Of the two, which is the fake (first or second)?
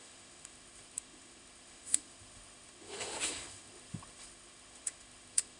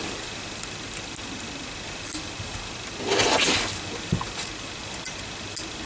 first